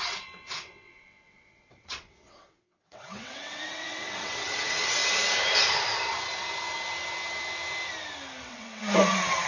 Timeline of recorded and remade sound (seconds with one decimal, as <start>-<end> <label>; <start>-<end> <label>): 0.0-5.0 remade; 5.0-8.4 recorded; 8.4-9.5 remade